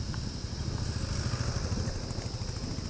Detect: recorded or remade recorded